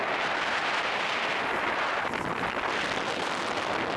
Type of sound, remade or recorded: recorded